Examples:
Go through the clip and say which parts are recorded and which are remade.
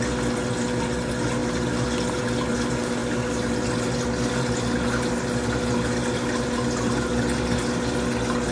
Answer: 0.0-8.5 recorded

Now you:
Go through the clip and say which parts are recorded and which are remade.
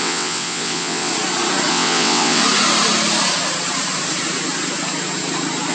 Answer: 0.0-1.1 remade; 1.1-1.7 recorded; 1.7-2.4 remade; 2.4-5.7 recorded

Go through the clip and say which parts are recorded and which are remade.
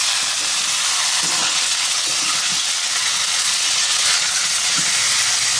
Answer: 0.0-1.4 recorded; 1.4-4.8 remade; 4.8-5.6 recorded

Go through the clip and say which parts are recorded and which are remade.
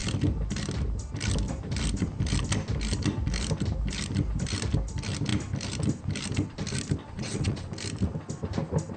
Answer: 0.0-7.0 recorded; 7.0-7.7 remade; 7.7-9.0 recorded